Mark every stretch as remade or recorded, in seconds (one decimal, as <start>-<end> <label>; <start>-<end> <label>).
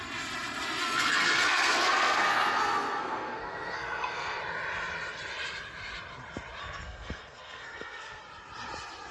0.0-0.8 recorded; 0.8-4.4 remade; 4.4-6.6 recorded; 6.6-8.2 remade; 8.2-9.1 recorded